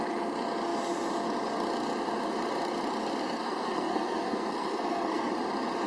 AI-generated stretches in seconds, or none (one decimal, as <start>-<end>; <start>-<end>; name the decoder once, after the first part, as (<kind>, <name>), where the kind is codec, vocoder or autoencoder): 3.2-5.3 (codec, SNAC)